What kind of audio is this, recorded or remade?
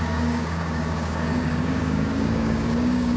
remade